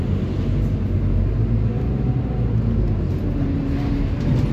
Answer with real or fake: real